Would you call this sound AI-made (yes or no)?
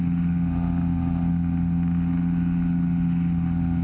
no